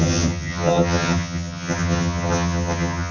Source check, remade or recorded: remade